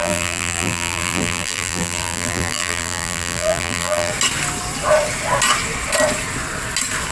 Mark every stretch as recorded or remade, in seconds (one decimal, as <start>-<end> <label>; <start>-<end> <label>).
0.0-4.1 remade; 4.1-7.1 recorded